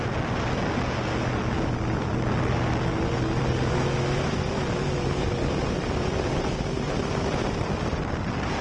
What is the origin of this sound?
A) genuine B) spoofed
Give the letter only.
A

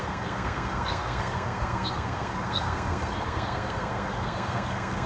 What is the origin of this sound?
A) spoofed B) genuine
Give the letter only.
A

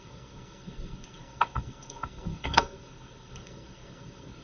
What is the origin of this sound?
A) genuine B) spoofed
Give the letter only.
B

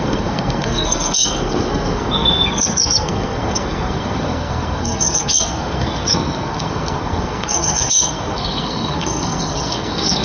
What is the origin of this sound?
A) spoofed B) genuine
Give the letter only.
A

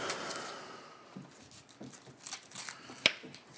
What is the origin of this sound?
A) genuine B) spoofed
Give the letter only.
A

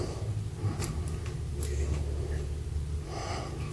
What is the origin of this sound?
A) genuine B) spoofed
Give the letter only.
A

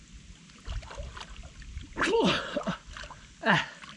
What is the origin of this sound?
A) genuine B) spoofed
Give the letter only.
A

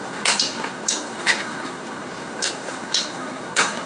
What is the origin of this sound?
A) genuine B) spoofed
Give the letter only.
B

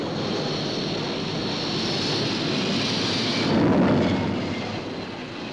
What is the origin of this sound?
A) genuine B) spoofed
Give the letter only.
A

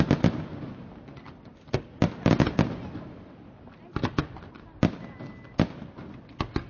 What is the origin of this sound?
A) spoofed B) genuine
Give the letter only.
B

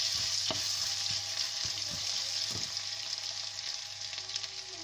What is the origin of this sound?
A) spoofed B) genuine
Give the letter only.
B